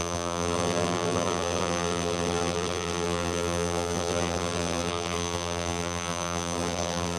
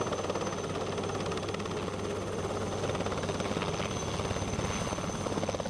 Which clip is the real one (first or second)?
second